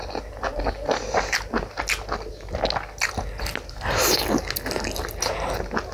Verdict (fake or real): real